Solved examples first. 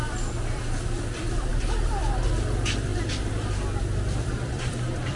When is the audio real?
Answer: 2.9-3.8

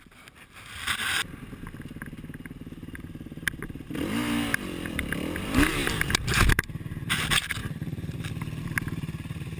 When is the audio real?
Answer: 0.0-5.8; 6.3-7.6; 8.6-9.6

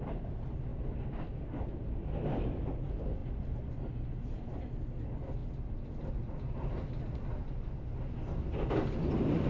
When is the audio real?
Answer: 0.0-9.5

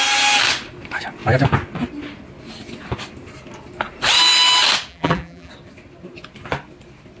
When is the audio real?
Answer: 0.0-4.9; 5.5-7.2

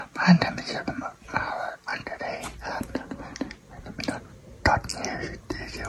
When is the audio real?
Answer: 0.0-1.9; 2.4-3.9; 4.7-5.9